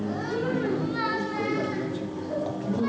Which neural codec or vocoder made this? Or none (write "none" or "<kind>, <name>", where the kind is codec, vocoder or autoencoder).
none